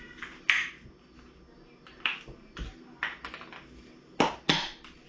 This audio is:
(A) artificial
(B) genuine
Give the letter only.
B